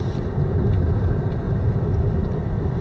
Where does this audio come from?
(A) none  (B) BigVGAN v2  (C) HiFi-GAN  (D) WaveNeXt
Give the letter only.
A